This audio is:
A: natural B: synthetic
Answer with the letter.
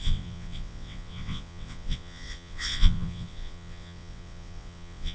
B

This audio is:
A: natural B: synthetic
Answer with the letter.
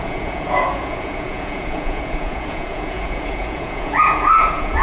B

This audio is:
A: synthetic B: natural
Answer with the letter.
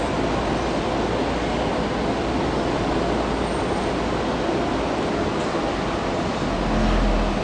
B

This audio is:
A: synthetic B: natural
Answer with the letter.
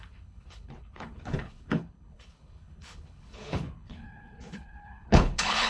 A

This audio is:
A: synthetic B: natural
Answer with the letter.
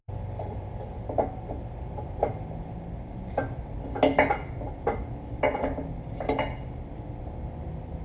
B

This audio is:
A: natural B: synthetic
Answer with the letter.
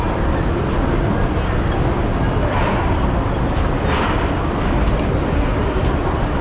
A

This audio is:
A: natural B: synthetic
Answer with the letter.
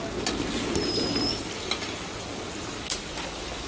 A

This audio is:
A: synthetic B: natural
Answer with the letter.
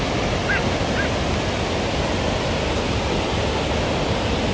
B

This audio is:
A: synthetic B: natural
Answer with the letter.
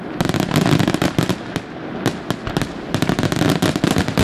B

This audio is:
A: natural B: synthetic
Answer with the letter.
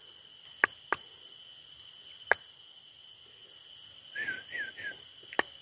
A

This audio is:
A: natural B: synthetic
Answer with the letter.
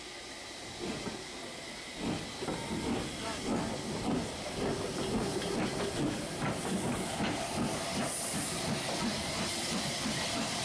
A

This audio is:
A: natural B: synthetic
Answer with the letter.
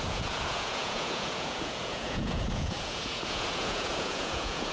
B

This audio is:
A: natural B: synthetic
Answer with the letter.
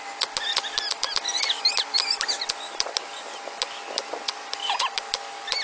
A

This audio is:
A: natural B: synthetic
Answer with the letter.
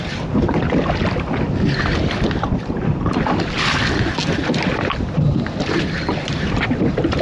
A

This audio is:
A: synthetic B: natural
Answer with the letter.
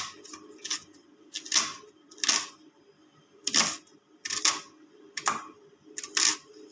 B